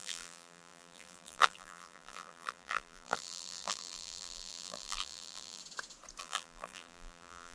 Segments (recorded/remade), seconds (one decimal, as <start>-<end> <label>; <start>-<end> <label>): 0.0-5.6 remade; 5.6-6.2 recorded; 6.2-7.5 remade